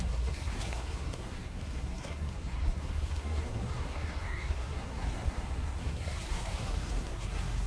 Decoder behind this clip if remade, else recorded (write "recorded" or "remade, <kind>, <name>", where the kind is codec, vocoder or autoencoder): remade, codec, SNAC